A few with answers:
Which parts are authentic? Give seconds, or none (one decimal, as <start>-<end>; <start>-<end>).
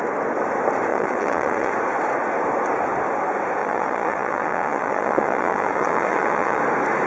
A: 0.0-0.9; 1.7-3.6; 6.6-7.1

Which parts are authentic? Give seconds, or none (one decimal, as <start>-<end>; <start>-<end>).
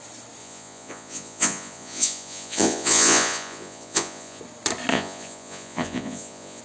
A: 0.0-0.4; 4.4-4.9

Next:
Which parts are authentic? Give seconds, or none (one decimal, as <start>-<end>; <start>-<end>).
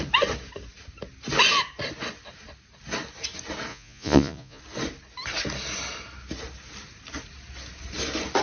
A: 0.0-3.7; 4.6-8.4